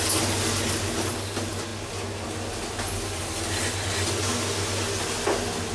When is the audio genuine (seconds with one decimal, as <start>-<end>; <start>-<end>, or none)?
0.0-5.7